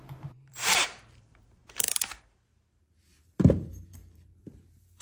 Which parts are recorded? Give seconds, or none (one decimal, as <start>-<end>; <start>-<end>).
none